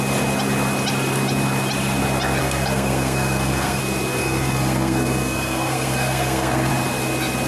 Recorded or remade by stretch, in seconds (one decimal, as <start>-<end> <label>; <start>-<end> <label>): 0.0-2.4 recorded; 2.4-3.8 remade; 3.8-4.2 recorded; 4.2-6.7 remade; 6.7-7.5 recorded